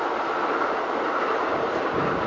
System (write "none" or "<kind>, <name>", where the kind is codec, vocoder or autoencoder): none